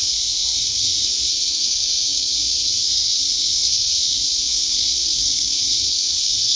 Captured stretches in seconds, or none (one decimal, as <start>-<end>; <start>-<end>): none

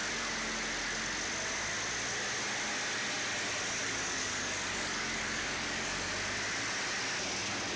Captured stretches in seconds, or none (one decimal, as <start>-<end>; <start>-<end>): 0.0-3.8; 6.1-7.8

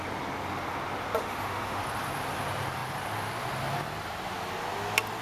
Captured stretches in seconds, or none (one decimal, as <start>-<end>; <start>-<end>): 0.0-1.2; 1.8-5.2

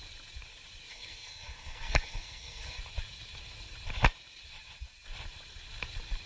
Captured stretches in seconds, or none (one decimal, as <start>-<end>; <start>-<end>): 0.0-0.9; 2.8-6.3

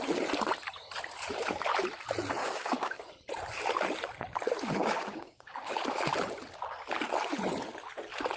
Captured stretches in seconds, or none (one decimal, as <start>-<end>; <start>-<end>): 0.0-2.4; 3.0-4.8; 5.8-8.4

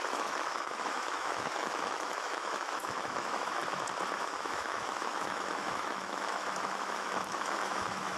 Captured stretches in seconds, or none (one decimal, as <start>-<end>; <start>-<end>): 3.6-4.2

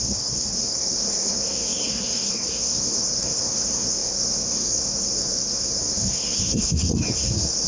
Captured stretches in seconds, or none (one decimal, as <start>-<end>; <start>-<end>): none